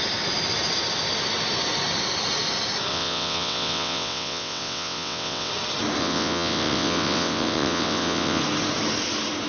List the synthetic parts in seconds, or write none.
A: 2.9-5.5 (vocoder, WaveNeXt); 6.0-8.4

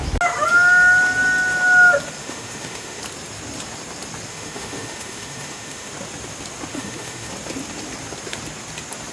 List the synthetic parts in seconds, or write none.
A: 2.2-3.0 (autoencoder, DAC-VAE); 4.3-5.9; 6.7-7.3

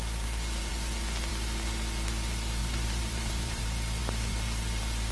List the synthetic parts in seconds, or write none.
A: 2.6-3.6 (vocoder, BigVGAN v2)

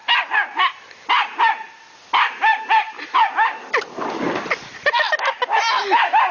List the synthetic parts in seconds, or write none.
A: none

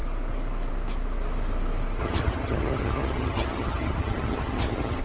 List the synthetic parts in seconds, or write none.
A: 2.0-5.0 (vocoder, HiFi-GAN)

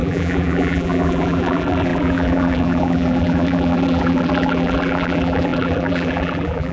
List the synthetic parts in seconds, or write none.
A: 0.0-6.7 (vocoder, BigVGAN v2)

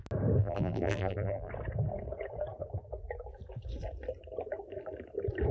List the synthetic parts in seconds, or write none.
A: 0.4-1.5 (vocoder, BigVGAN v2)

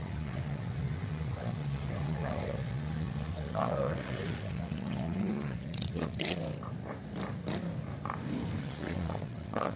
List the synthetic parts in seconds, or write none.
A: 0.0-6.4 (vocoder, WaveNeXt); 8.6-9.8